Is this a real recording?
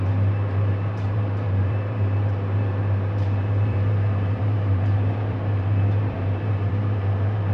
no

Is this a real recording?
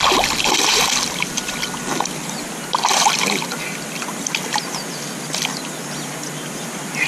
yes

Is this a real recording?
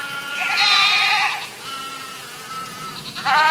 no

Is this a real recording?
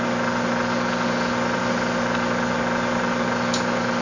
yes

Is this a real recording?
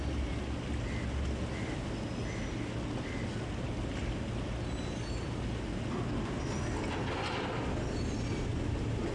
yes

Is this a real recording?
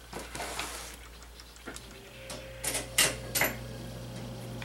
yes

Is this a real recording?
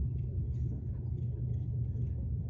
no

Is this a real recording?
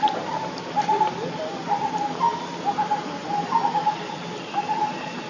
no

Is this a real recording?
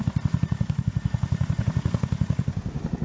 yes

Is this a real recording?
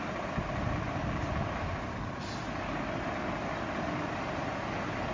yes